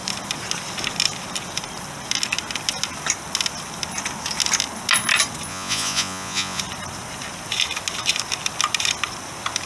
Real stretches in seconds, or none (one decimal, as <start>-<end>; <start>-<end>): 0.0-5.5; 6.6-9.7